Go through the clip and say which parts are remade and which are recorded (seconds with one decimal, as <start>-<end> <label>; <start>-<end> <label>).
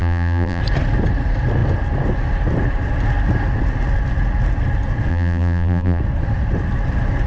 0.0-0.6 remade; 0.6-5.1 recorded; 5.1-6.0 remade; 6.0-7.3 recorded